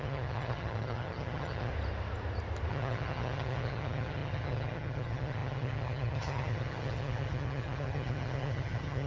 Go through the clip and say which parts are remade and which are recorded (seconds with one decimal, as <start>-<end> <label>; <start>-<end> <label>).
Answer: 0.0-1.7 remade; 1.7-2.7 recorded; 2.7-9.1 remade